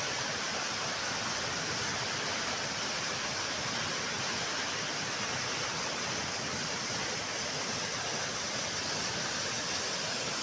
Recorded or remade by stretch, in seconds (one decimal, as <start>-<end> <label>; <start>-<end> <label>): 0.0-10.4 recorded